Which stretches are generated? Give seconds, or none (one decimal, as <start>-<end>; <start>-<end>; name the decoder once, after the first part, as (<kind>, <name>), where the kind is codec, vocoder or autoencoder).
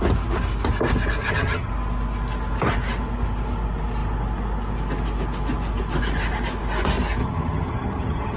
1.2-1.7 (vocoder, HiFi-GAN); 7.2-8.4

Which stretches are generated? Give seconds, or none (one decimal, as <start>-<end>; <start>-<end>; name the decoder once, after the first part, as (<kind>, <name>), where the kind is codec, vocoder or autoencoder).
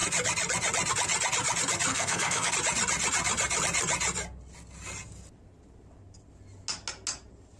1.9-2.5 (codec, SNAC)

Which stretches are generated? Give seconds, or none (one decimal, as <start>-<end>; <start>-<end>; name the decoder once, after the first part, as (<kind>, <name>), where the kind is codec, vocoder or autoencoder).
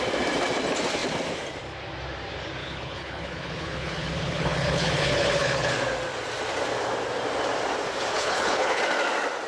2.6-5.7 (codec, HILCodec); 8.1-8.8